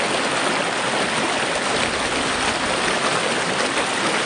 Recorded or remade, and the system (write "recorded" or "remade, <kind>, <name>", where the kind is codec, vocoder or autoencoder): recorded